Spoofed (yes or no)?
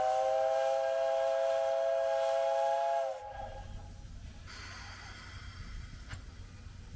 no